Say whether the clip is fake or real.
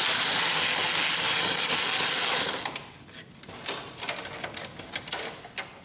real